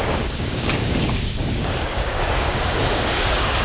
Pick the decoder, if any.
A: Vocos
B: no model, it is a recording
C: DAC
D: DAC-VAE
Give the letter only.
C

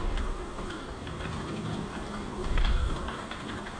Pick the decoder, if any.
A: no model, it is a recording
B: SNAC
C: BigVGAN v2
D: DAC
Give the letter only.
D